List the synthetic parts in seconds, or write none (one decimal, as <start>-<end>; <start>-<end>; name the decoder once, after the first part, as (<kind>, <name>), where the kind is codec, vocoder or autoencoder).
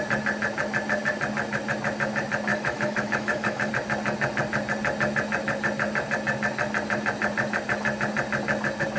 2.5-3.7 (autoencoder, DAC-VAE)